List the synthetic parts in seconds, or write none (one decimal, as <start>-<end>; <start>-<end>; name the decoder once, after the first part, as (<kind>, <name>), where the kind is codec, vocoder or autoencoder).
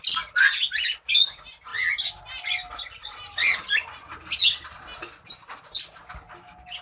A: none